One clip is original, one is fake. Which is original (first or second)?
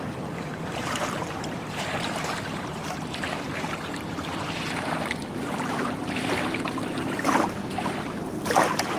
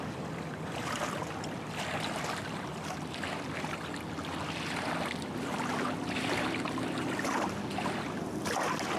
second